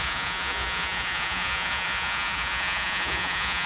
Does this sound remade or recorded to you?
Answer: remade